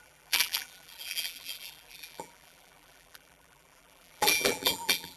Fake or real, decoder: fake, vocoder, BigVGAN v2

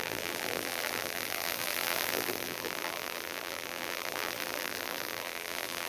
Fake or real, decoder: fake, vocoder, BigVGAN v2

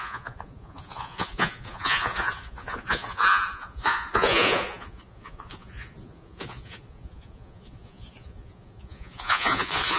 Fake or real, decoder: fake, vocoder, Vocos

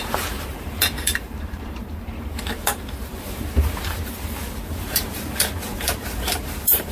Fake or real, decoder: fake, vocoder, BigVGAN v2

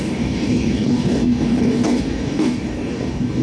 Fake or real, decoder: fake, codec, DAC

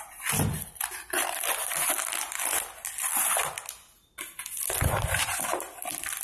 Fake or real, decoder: real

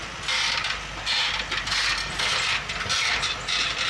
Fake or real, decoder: real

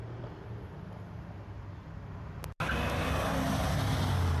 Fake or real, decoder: real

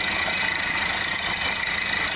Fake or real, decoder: real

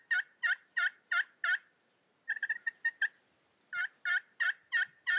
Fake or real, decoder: real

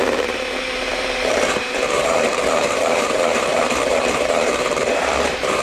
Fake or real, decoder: fake, vocoder, BigVGAN v2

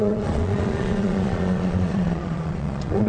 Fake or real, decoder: fake, vocoder, Vocos